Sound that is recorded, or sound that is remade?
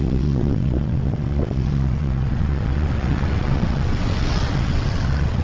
remade